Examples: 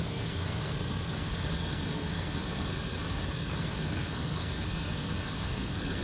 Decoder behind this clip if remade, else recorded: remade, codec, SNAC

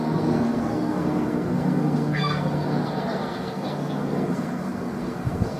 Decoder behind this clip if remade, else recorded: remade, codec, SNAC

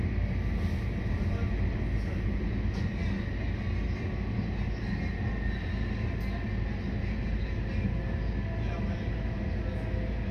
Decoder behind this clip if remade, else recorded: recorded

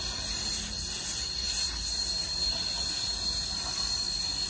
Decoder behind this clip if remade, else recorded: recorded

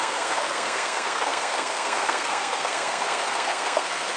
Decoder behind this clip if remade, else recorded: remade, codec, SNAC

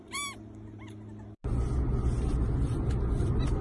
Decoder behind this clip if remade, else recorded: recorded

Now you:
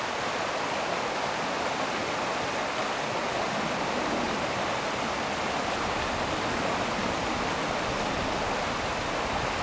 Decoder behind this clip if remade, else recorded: recorded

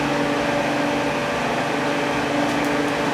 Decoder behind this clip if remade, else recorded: recorded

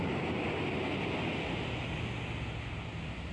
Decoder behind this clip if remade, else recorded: recorded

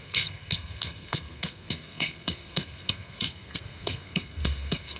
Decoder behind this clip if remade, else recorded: remade, codec, SNAC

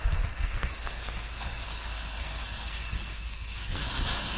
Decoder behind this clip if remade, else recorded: remade, codec, SNAC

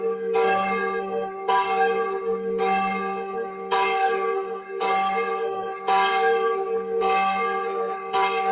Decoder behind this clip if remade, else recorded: remade, codec, SNAC